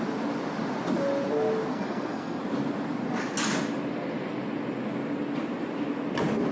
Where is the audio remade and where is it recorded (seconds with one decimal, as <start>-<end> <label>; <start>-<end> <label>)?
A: 0.0-1.7 recorded; 1.7-2.4 remade; 2.4-6.5 recorded